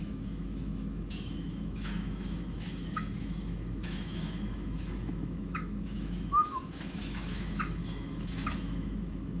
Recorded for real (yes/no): no